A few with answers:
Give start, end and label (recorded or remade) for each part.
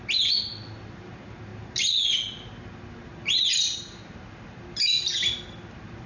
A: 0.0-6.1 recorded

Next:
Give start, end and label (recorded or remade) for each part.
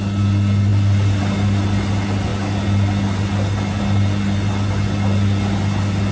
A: 0.0-6.1 recorded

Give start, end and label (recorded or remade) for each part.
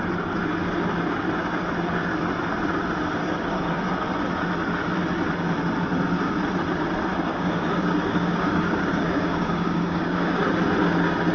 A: 0.0-3.2 recorded; 3.2-3.8 remade; 3.8-7.3 recorded; 7.3-10.4 remade; 10.4-11.3 recorded